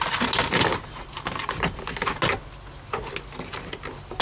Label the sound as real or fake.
real